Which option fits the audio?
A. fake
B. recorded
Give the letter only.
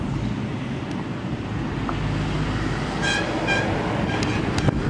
B